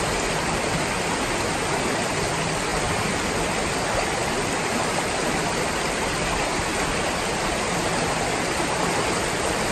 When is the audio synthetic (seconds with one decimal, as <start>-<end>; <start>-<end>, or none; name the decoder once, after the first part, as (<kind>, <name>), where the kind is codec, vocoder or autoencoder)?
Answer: none